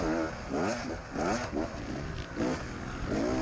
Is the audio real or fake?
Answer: real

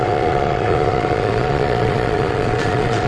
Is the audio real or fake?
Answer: fake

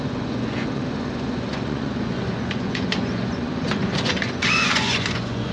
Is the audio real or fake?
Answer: fake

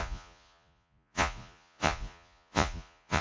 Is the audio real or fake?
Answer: fake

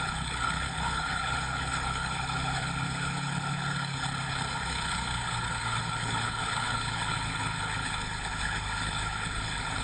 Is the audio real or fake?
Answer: fake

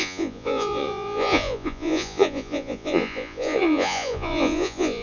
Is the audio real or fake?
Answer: fake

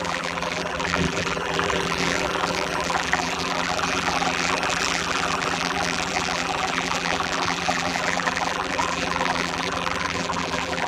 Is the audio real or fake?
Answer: fake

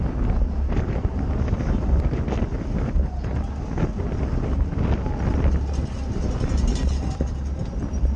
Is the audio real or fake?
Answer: real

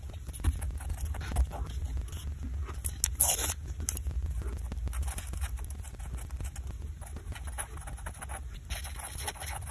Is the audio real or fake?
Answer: real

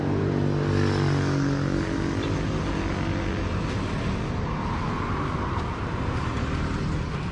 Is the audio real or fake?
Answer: real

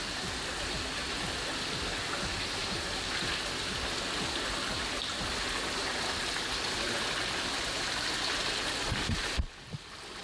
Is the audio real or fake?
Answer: real